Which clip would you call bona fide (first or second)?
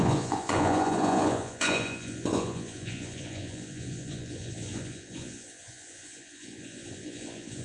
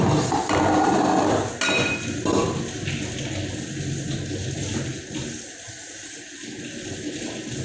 second